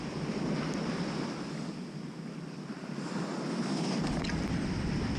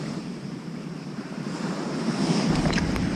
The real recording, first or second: first